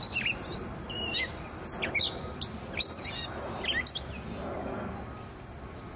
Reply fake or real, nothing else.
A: real